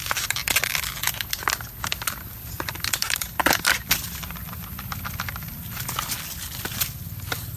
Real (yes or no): yes